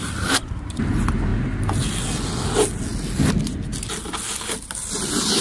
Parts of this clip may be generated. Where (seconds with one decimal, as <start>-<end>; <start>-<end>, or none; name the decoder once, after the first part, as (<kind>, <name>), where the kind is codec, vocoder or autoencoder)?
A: 0.0-1.3 (vocoder, BigVGAN v2); 4.5-5.4